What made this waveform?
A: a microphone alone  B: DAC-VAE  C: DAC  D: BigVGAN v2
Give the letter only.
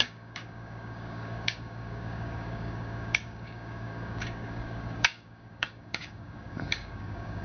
C